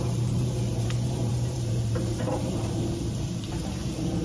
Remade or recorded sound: remade